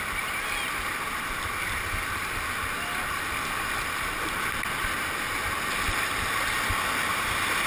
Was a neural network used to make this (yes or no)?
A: no